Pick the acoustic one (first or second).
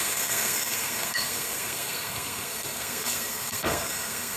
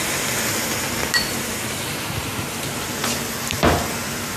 second